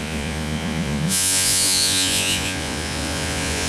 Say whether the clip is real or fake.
fake